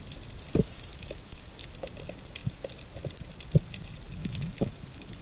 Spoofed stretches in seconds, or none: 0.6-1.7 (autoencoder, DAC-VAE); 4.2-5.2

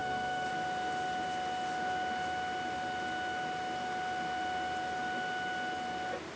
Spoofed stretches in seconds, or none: 0.0-0.5 (autoencoder, DAC-VAE)

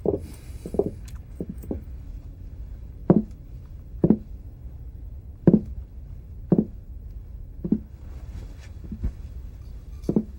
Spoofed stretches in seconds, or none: none

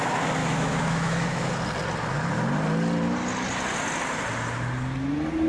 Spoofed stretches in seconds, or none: 0.4-1.5 (autoencoder, DAC-VAE)

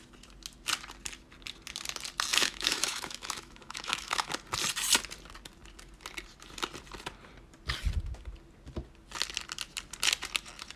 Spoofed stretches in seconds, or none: 2.3-4.3 (autoencoder, DAC-VAE)